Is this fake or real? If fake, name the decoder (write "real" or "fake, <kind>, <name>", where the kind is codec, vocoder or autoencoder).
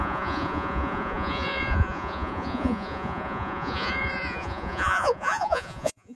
fake, vocoder, Vocos